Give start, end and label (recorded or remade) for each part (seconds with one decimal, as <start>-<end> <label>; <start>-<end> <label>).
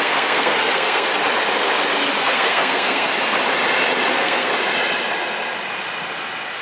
0.0-1.1 remade; 1.1-2.2 recorded; 2.2-3.1 remade; 3.1-4.1 recorded; 4.1-4.5 remade; 4.5-6.6 recorded